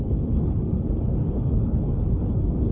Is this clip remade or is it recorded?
remade